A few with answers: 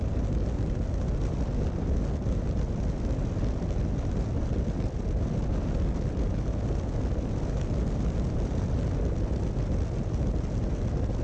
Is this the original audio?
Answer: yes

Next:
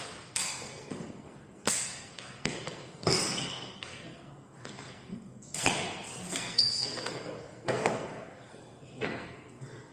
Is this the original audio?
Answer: no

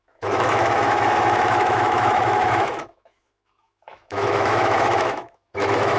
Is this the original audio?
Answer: no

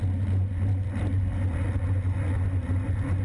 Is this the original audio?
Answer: yes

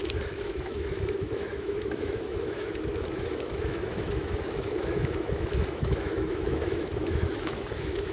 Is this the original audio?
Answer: no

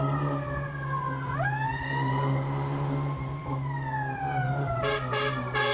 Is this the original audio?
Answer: yes